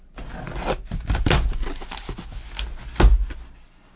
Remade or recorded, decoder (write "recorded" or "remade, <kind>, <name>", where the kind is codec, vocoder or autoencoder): recorded